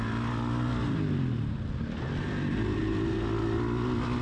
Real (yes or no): yes